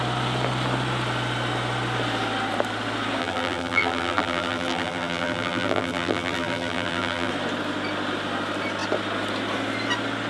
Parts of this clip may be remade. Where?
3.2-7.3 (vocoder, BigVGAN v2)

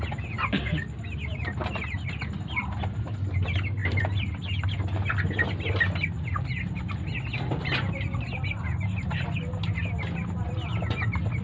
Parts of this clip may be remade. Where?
none

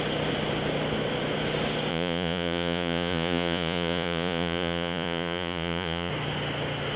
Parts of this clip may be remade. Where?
1.9-6.1 (vocoder, Vocos)

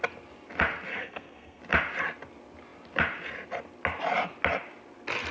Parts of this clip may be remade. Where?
0.9-1.6 (codec, SNAC)

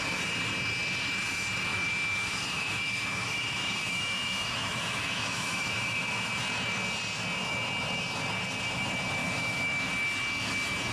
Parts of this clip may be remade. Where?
1.7-6.3 (autoencoder, DAC-VAE); 9.2-9.9